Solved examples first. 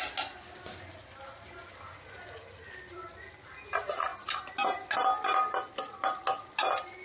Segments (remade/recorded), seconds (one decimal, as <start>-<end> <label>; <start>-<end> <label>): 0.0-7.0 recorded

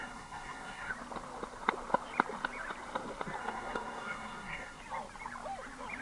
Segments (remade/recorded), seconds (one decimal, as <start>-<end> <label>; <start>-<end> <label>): 0.0-0.9 remade; 0.9-3.4 recorded; 3.4-4.8 remade; 4.8-6.0 recorded

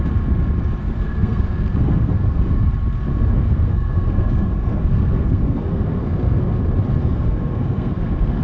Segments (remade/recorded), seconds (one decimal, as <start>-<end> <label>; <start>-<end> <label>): 0.0-0.8 recorded; 0.8-2.7 remade; 2.7-3.1 recorded; 3.1-6.5 remade; 6.5-7.0 recorded; 7.0-8.4 remade

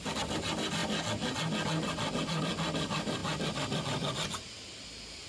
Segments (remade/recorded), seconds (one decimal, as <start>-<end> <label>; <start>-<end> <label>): 0.0-5.3 recorded

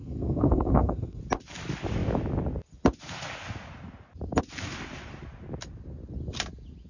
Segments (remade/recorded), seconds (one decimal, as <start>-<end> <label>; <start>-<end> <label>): 0.0-1.2 remade; 1.2-6.9 recorded

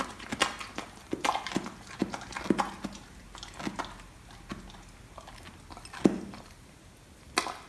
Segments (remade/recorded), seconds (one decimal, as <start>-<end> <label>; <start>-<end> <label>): 0.0-7.7 recorded